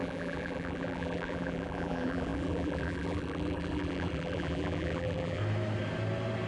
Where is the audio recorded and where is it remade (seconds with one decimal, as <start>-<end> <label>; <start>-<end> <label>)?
0.0-5.4 remade; 5.4-6.5 recorded